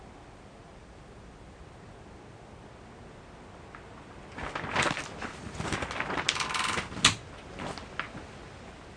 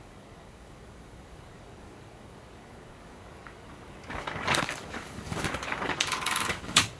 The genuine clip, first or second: first